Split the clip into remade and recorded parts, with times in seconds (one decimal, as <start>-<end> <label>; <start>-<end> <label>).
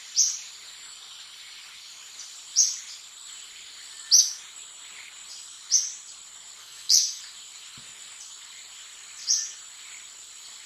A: 0.0-6.6 recorded; 6.6-7.2 remade; 7.2-10.7 recorded